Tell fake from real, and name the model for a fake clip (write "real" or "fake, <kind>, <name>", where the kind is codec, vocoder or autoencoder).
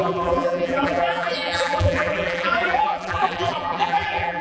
fake, vocoder, BigVGAN v2